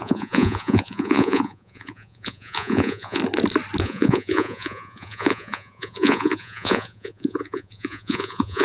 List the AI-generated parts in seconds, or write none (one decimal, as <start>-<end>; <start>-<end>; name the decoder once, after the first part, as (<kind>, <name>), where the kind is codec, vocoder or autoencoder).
0.0-3.2 (vocoder, Vocos); 3.8-8.6